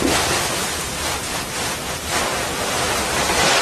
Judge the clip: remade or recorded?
recorded